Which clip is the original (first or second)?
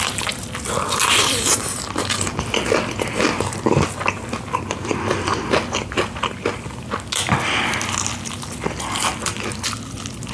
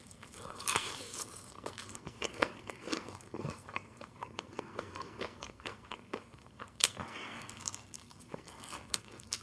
first